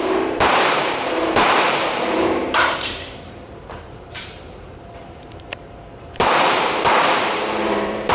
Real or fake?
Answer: fake